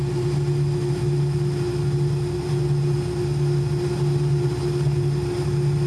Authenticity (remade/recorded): recorded